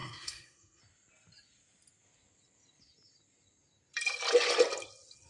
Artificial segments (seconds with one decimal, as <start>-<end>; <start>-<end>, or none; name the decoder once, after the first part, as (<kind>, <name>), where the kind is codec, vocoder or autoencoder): 0.0-0.8 (codec, SNAC)